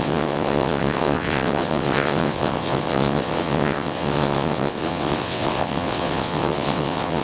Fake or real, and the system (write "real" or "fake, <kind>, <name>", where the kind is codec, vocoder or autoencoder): fake, vocoder, WaveNeXt